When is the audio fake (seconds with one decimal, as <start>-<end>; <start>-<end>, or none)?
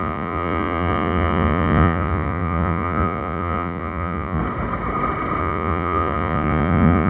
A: 0.0-4.4; 5.4-7.1